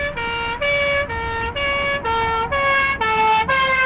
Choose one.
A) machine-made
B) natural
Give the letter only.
B